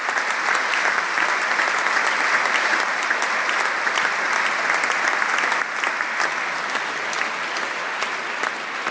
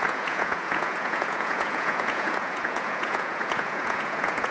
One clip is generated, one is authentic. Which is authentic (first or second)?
first